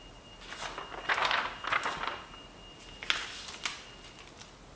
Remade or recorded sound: recorded